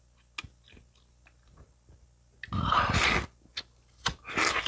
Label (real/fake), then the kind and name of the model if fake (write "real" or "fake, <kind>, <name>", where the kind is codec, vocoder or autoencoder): real